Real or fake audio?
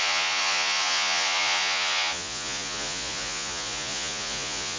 fake